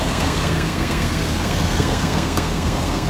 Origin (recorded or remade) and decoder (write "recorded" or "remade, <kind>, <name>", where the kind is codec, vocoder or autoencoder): remade, codec, SNAC